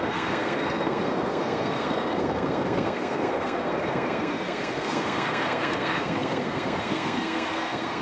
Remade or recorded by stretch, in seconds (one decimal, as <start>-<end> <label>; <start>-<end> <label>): 0.0-8.0 remade

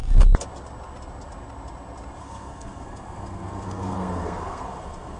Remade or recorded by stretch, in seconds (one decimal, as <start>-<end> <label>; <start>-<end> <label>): 0.0-2.2 recorded; 2.2-5.2 remade

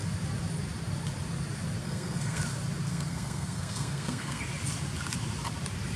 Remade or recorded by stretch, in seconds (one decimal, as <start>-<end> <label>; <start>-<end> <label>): 0.0-1.8 recorded; 1.8-2.4 remade; 2.4-2.9 recorded; 2.9-4.4 remade; 4.4-6.0 recorded

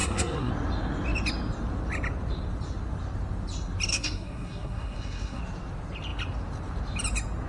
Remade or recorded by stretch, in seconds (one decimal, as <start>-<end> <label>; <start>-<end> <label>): 0.0-0.5 remade; 0.5-3.9 recorded; 3.9-5.4 remade; 5.4-7.5 recorded

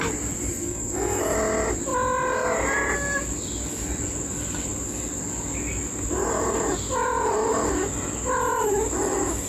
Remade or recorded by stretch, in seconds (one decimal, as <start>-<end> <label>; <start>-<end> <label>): 0.0-0.5 recorded; 0.5-1.2 remade; 1.2-9.5 recorded

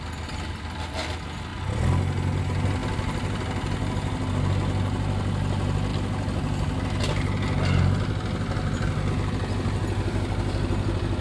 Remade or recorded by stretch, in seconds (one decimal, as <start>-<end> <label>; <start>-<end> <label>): 0.0-11.2 recorded

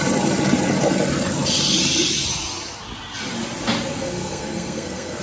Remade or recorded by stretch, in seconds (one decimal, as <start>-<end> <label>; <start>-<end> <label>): 0.0-3.9 recorded; 3.9-5.2 remade